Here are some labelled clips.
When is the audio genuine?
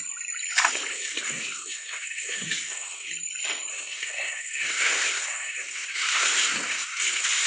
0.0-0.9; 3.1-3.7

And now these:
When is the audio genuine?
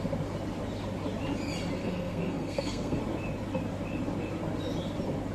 0.0-1.8; 3.0-5.3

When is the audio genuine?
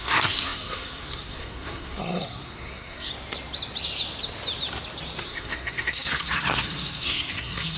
3.1-5.2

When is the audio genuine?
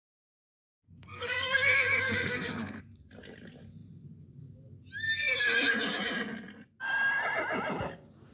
2.8-8.3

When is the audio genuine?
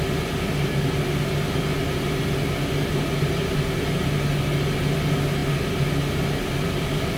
0.0-7.2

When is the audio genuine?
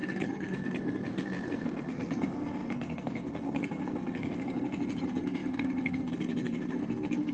none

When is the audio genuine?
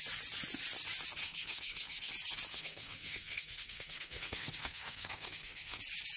0.0-1.2; 2.1-2.5; 5.8-6.2